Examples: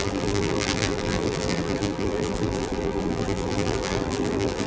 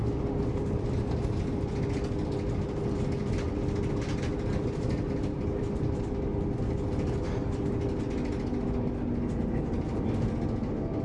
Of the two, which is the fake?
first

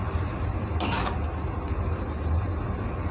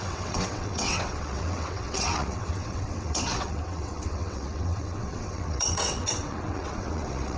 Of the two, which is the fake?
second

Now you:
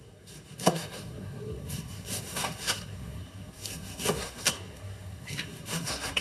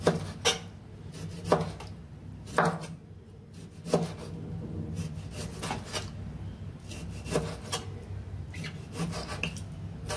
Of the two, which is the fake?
first